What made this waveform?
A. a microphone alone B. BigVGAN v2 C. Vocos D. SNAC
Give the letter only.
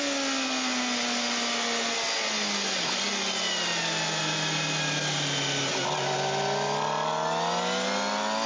A